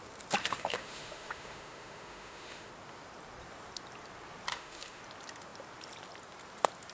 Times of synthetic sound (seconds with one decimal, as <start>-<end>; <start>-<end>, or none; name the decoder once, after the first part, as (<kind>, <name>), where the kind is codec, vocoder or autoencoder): 0.4-2.7 (autoencoder, DAC-VAE); 4.5-5.0